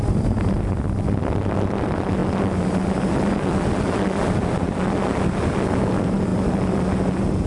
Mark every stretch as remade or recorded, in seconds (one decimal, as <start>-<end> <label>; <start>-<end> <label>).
0.0-7.5 recorded